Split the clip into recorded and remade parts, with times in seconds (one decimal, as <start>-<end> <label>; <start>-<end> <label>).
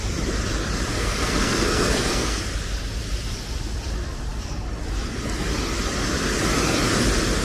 0.0-0.9 recorded; 0.9-2.4 remade; 2.4-7.4 recorded